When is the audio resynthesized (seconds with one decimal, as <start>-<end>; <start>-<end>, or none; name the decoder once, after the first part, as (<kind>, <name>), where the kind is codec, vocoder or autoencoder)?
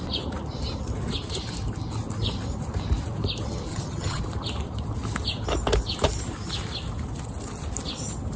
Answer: 3.7-4.2 (vocoder, HiFi-GAN)